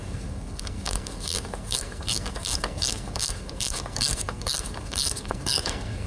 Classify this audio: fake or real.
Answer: fake